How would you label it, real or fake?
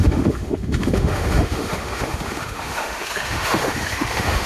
fake